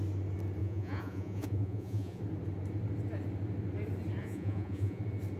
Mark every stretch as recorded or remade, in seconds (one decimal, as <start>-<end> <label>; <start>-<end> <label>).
0.0-0.6 recorded; 0.6-2.2 remade; 2.2-4.2 recorded; 4.2-5.0 remade; 5.0-5.4 recorded